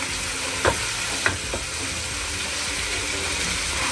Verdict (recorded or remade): recorded